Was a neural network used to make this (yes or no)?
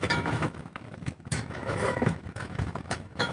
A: yes